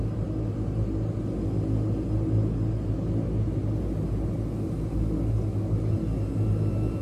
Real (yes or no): yes